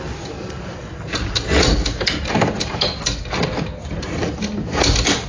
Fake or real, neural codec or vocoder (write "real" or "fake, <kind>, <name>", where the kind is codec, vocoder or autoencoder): real